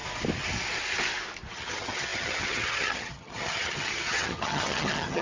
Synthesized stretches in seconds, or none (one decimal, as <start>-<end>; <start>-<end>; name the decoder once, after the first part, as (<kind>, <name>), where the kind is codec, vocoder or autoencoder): 1.5-5.2 (vocoder, HiFi-GAN)